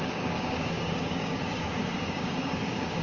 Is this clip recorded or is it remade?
remade